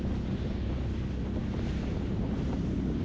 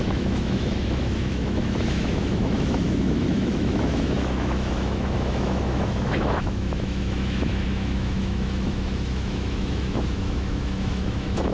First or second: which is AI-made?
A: second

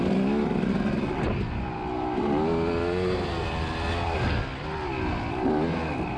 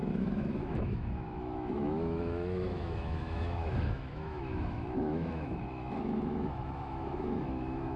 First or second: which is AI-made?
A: second